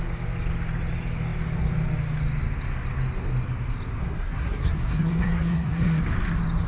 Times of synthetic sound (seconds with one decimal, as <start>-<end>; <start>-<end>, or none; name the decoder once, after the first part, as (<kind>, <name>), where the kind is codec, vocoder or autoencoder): 4.0-6.0 (codec, SNAC)

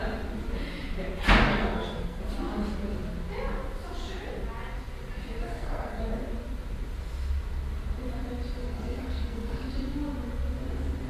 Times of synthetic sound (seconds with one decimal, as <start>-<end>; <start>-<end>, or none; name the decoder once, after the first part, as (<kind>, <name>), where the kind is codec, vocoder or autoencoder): 1.5-2.2 (codec, SNAC); 5.5-6.0; 8.6-9.7

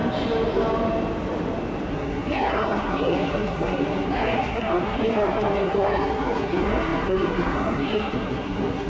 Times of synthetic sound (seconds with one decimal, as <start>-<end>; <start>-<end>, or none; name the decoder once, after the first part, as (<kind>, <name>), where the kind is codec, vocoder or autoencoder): 1.9-8.9 (codec, SNAC)

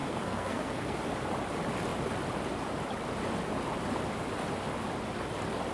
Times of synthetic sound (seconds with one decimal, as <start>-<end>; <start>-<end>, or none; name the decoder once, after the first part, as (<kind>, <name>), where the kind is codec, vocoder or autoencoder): 0.0-1.0 (codec, SNAC)

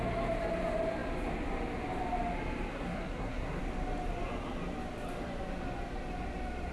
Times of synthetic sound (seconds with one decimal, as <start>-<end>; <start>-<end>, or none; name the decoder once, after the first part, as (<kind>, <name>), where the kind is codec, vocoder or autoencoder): 2.7-3.6 (codec, SNAC)

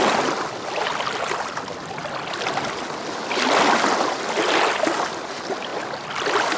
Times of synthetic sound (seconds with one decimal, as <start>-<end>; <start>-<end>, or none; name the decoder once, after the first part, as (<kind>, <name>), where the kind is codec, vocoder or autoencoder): none

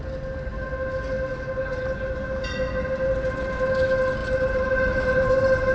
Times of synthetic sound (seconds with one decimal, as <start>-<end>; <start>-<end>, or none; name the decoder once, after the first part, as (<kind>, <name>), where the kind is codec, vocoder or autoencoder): none

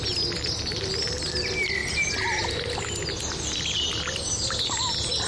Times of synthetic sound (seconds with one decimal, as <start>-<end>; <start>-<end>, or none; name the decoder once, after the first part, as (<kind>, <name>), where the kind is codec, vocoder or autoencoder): none